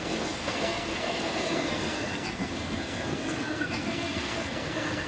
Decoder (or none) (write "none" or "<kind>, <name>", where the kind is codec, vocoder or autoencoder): codec, SNAC